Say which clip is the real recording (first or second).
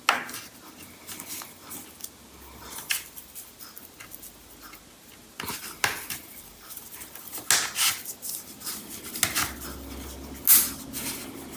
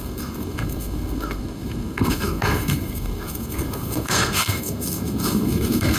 first